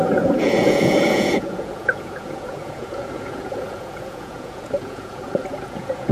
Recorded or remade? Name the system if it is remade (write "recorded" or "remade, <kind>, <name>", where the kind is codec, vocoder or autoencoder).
remade, vocoder, Vocos